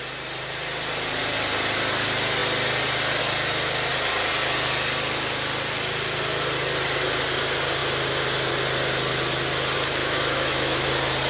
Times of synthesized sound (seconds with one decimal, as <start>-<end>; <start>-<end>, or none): 10.0-10.9